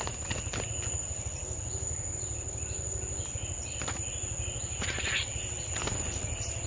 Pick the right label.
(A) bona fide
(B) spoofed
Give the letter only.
A